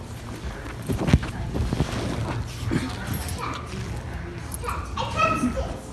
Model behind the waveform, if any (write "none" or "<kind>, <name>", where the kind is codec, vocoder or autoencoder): none